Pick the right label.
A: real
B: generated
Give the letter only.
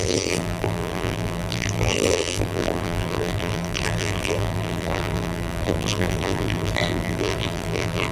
B